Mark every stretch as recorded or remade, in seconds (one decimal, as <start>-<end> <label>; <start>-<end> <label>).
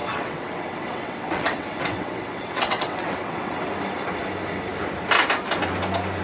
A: 0.0-3.7 remade; 3.7-6.2 recorded